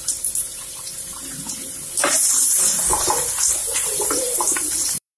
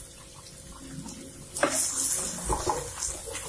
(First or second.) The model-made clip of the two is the first